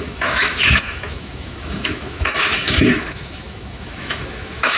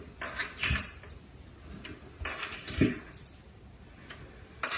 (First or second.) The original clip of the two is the second